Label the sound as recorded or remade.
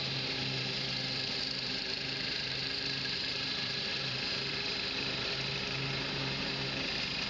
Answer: remade